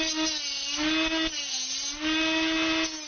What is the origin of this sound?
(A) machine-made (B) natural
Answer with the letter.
B